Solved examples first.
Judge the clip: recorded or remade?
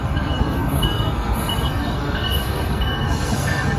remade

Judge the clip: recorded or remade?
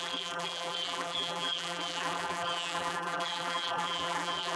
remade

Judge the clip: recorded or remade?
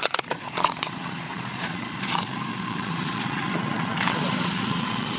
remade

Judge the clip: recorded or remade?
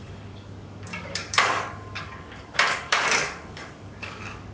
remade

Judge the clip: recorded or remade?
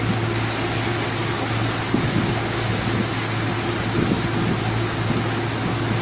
recorded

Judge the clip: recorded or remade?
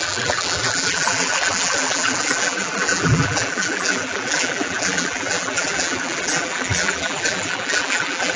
remade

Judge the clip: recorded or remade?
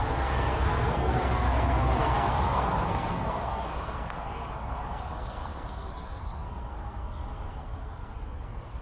remade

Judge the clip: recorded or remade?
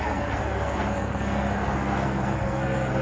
remade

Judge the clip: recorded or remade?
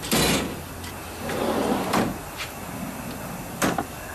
recorded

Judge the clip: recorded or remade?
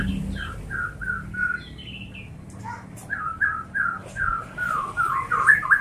recorded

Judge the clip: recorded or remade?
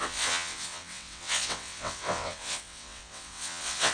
remade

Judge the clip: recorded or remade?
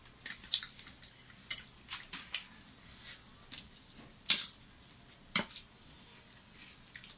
recorded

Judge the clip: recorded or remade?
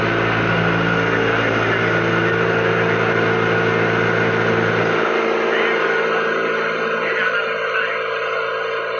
recorded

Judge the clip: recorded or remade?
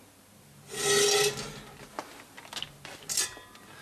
recorded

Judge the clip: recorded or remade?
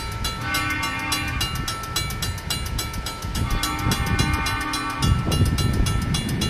recorded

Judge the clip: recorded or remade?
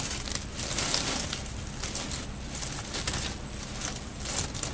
recorded